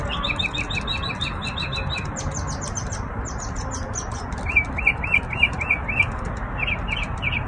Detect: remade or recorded recorded